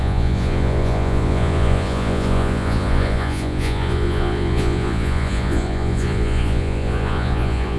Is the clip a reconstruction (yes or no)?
yes